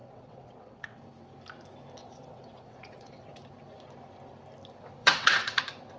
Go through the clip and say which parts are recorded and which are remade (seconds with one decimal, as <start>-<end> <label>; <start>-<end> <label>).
0.0-1.0 remade; 1.0-2.0 recorded; 2.0-3.3 remade; 3.3-5.0 recorded; 5.0-5.6 remade; 5.6-6.0 recorded